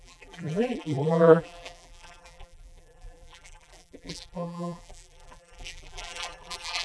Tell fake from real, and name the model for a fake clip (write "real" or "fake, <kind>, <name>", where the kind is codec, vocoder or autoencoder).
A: fake, vocoder, BigVGAN v2